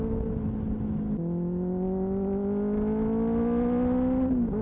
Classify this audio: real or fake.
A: real